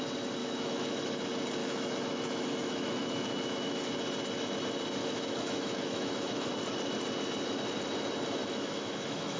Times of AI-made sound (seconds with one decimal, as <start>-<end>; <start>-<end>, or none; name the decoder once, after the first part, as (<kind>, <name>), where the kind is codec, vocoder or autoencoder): 0.4-1.0 (autoencoder, DAC-VAE); 1.6-3.8; 5.0-6.5; 8.4-9.4